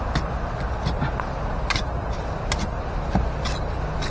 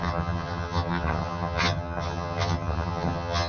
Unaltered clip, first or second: first